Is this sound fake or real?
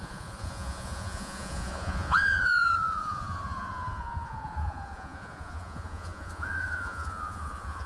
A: fake